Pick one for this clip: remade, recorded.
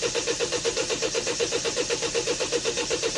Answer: remade